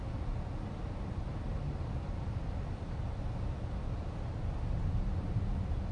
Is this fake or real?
real